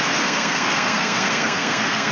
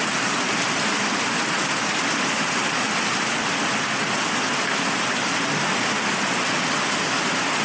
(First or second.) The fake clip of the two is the first